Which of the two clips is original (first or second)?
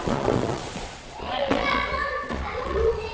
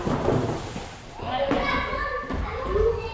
second